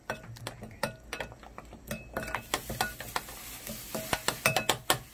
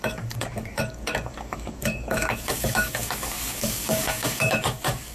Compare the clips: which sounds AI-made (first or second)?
second